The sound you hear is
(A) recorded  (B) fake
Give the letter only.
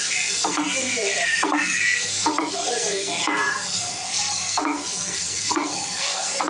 B